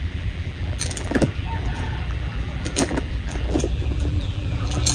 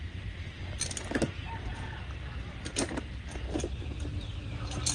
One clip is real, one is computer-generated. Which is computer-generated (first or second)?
first